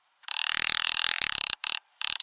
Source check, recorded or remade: remade